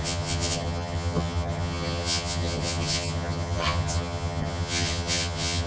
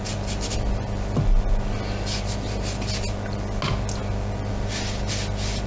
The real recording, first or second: second